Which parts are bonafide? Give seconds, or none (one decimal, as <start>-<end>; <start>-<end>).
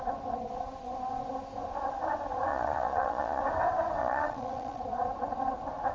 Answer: 0.0-2.5; 3.4-4.0; 4.8-5.9